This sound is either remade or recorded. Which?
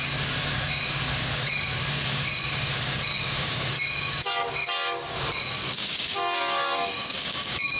remade